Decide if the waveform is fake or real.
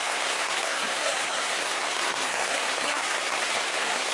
fake